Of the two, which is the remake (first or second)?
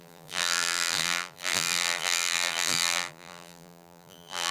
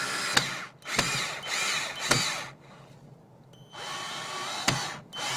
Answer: first